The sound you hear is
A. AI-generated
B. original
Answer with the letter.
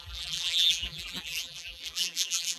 A